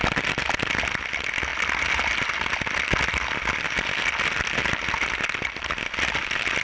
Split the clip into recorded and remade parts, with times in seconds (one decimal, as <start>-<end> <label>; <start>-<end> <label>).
0.0-6.6 recorded